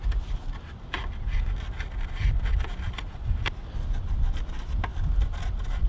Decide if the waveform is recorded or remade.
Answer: recorded